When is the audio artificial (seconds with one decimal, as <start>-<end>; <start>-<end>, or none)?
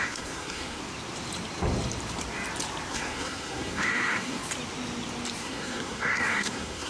0.0-0.8; 2.9-4.4; 5.4-6.9